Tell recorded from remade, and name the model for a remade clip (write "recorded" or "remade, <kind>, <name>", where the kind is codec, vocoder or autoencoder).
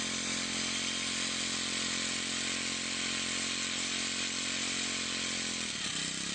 recorded